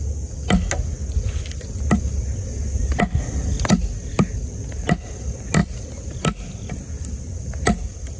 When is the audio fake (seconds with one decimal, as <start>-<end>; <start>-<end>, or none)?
none